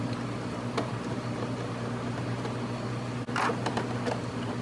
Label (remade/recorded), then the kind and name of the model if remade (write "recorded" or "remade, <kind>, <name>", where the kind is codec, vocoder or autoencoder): recorded